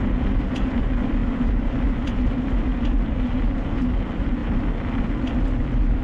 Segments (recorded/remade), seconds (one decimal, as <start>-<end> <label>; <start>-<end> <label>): 0.0-6.0 recorded